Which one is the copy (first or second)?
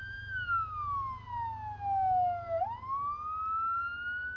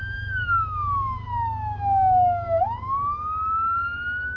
second